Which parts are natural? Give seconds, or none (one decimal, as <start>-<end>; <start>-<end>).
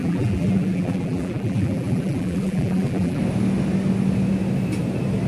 3.2-5.3